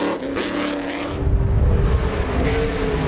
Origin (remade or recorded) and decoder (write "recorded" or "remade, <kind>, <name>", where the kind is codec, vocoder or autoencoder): recorded